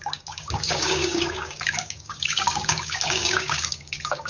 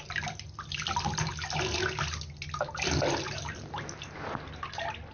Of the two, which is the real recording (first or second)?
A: second